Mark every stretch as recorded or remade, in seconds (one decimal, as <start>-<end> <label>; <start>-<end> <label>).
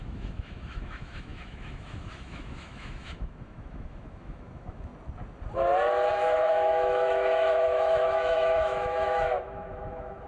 0.0-4.9 remade; 4.9-6.1 recorded; 6.1-10.3 remade